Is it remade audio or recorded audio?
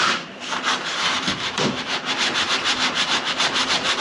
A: remade